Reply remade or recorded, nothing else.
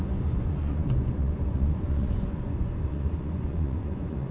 remade